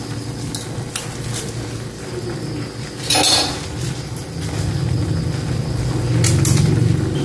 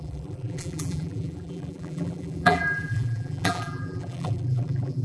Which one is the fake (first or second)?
second